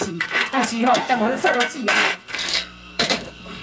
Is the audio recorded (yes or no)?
no